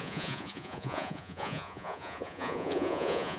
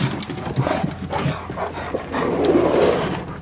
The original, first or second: second